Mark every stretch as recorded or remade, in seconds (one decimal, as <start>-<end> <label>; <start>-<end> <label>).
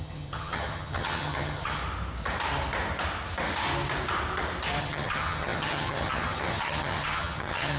0.0-1.8 remade; 1.8-4.8 recorded; 4.8-7.8 remade